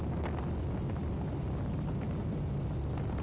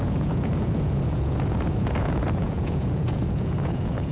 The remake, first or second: second